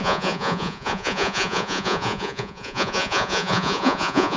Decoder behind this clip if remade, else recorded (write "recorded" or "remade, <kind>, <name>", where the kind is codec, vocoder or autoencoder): remade, vocoder, Vocos